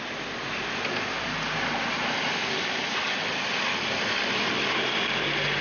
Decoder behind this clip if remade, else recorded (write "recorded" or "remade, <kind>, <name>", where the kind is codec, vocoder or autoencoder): recorded